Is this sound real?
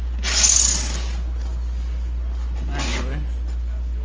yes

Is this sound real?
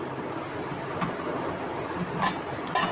yes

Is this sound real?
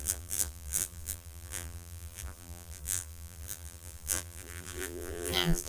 no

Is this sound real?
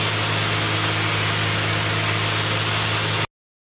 yes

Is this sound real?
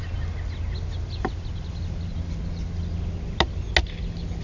yes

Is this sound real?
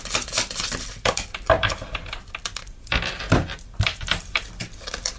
no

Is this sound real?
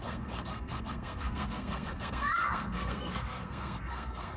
no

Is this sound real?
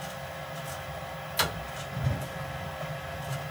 yes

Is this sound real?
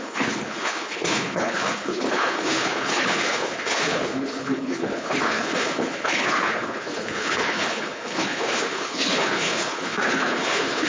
no